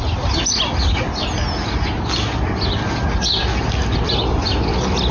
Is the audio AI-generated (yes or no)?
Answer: no